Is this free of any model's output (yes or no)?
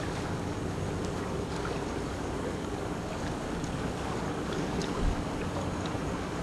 no